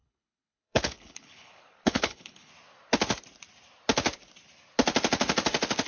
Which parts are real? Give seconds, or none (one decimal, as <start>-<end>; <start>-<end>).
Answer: 2.5-5.9